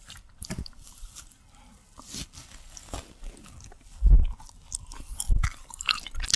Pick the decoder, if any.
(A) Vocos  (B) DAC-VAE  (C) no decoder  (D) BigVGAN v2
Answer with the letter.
C